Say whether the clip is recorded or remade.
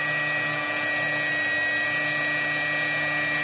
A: recorded